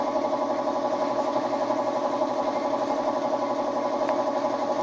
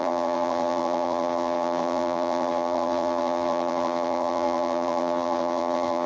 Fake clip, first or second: second